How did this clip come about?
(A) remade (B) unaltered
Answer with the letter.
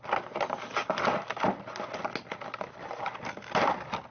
B